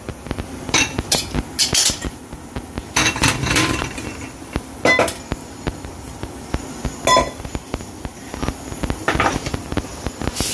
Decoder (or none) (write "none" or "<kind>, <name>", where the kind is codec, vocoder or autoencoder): none